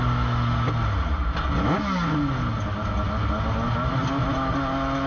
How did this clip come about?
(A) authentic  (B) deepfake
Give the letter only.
A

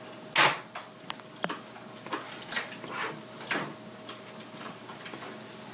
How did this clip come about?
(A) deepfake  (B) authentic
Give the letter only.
B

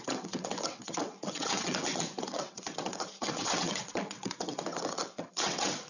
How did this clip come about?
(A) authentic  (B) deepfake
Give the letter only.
B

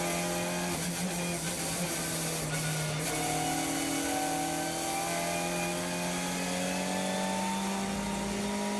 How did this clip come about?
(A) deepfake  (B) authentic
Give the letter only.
B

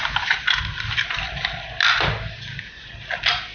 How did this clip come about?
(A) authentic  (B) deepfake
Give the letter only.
A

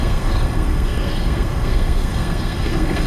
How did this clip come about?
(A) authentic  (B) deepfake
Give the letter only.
B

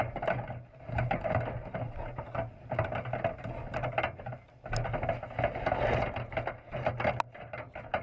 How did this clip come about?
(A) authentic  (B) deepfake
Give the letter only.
A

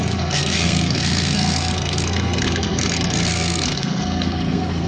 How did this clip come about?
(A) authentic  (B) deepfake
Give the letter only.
B